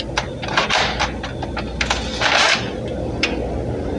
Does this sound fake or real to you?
real